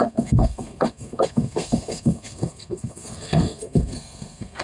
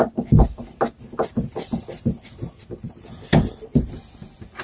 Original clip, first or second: second